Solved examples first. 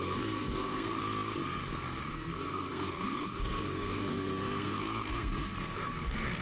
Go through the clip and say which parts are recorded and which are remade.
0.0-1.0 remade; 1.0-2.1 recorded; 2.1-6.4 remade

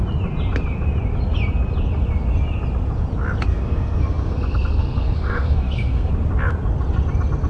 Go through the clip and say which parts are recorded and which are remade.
0.0-3.5 recorded; 3.5-6.1 remade; 6.1-7.5 recorded

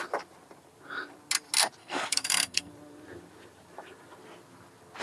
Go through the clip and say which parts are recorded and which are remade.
0.0-1.8 recorded; 1.8-2.7 remade; 2.7-5.0 recorded

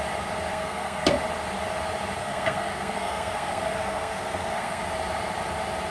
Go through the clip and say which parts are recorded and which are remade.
0.0-0.5 recorded; 0.5-1.1 remade; 1.1-2.2 recorded; 2.2-4.8 remade; 4.8-5.9 recorded